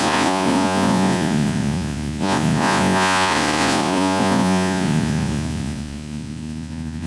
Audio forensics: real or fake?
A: fake